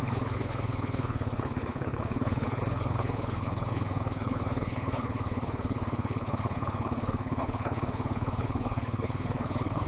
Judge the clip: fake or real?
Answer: fake